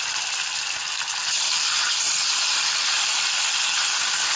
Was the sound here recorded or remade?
recorded